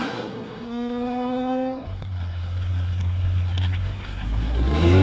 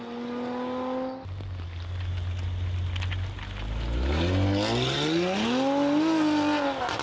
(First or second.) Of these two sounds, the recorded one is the second